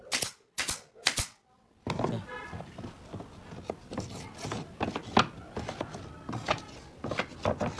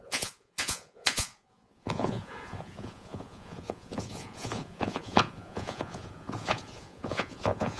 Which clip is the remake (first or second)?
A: second